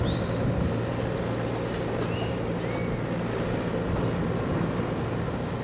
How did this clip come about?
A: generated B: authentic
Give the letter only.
B